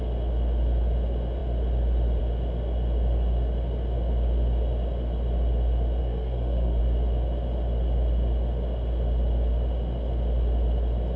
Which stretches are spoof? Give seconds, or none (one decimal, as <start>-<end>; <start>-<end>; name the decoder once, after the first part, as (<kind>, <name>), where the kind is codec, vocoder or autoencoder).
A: 6.0-6.8 (codec, SNAC)